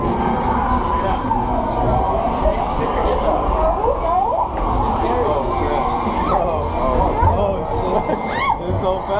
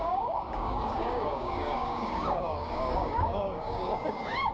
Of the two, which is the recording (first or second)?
first